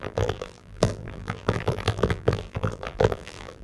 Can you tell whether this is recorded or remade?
remade